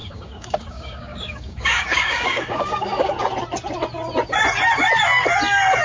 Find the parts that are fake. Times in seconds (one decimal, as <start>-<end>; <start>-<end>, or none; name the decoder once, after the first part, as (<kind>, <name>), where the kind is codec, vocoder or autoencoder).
0.0-3.1 (codec, DAC)